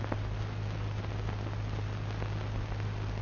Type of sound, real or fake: real